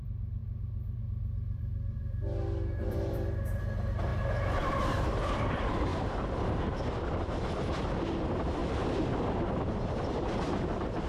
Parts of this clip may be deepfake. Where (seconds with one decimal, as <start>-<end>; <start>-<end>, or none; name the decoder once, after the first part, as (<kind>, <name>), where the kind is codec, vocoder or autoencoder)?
0.0-0.4 (vocoder, BigVGAN v2); 1.0-4.1; 5.2-5.9; 6.5-8.6; 9.8-11.1